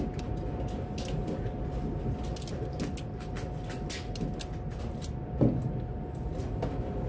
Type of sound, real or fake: real